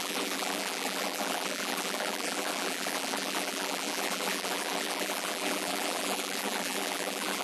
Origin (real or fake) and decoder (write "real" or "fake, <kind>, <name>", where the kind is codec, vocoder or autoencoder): fake, vocoder, BigVGAN v2